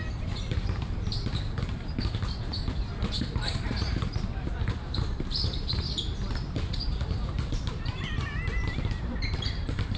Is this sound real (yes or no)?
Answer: no